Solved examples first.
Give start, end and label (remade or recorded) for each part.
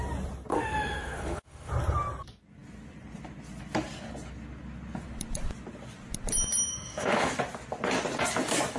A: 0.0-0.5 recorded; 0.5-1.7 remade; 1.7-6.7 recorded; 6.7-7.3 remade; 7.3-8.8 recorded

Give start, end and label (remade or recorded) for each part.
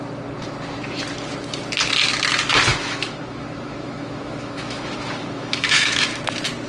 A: 0.0-2.7 recorded; 2.7-6.2 remade; 6.2-6.7 recorded